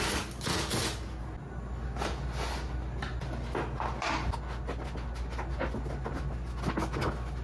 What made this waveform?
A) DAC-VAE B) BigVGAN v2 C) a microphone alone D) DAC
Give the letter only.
C